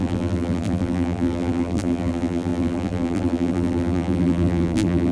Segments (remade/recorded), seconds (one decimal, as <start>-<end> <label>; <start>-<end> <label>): 0.0-5.1 remade